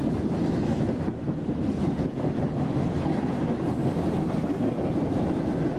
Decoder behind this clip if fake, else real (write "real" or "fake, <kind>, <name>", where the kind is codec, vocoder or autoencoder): real